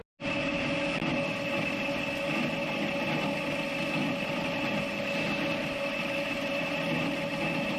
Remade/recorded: recorded